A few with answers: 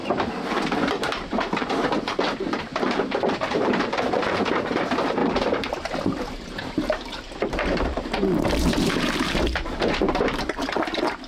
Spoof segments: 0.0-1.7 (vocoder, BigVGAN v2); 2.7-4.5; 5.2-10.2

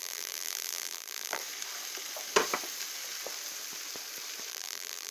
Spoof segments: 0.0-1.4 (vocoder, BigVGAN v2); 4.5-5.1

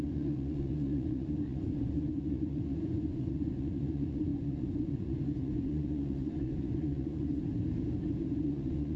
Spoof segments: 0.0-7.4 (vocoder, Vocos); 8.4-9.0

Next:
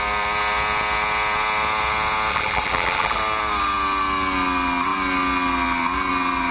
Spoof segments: 2.3-3.2 (vocoder, BigVGAN v2)